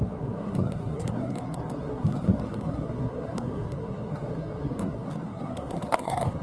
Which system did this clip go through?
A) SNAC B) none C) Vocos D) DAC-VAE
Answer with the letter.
A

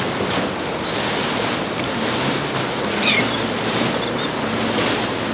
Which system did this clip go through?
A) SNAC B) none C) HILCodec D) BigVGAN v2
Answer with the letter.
B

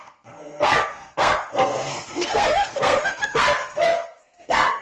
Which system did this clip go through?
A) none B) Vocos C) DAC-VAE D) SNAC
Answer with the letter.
D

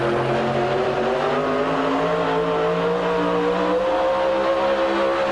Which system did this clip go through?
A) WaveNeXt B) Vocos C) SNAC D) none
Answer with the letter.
D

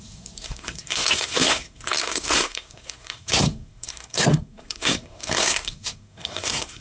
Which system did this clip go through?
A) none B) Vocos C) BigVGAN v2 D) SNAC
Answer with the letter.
D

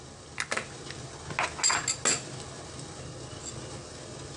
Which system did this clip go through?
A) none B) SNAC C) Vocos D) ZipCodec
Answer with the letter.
A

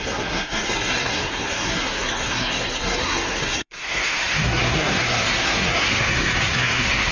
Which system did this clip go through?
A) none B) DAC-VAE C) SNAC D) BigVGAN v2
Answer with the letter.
C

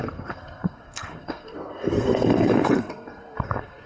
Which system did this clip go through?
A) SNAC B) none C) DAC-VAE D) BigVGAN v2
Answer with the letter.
A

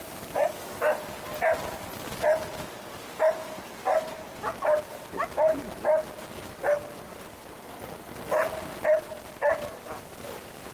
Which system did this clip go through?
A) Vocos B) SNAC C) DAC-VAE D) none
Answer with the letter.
D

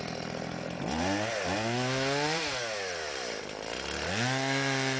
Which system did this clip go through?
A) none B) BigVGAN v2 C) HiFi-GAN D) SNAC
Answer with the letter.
A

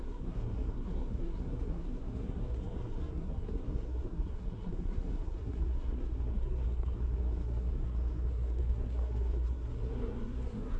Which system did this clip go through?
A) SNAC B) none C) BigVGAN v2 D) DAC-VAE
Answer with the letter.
A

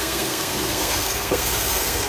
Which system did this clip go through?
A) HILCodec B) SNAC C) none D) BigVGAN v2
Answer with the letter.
B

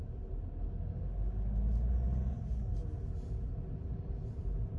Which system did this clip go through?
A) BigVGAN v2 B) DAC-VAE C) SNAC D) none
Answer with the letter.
D